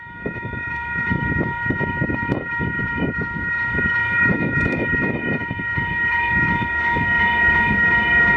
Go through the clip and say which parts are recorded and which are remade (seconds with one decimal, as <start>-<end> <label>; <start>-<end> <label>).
0.0-8.4 remade

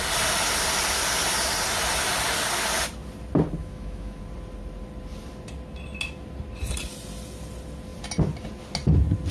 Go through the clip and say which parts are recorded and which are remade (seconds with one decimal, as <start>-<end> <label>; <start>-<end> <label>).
0.0-3.6 recorded; 3.6-4.2 remade; 4.2-9.3 recorded

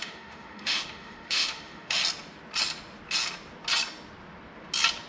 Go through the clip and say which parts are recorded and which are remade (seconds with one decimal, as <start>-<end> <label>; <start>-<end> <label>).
0.0-2.0 remade; 2.0-5.1 recorded

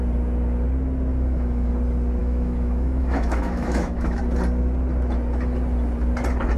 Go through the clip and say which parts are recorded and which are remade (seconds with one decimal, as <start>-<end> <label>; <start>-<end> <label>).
0.0-1.1 recorded; 1.1-1.7 remade; 1.7-2.2 recorded; 2.2-4.2 remade; 4.2-6.6 recorded

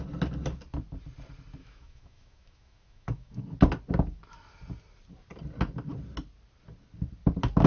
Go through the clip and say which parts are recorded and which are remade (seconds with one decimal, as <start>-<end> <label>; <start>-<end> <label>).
0.0-1.6 recorded; 1.6-3.4 remade; 3.4-7.7 recorded

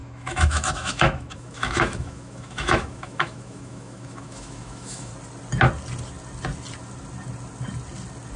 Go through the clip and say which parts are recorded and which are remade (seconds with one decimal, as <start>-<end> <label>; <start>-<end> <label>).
0.0-5.1 remade; 5.1-8.4 recorded

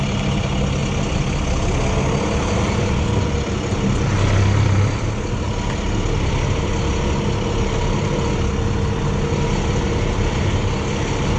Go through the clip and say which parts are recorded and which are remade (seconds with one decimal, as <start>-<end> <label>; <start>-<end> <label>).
0.0-11.4 recorded

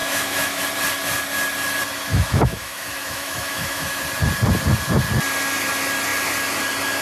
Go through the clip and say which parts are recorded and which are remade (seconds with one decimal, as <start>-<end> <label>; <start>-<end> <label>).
0.0-0.6 remade; 0.6-2.1 recorded; 2.1-4.0 remade; 4.0-7.0 recorded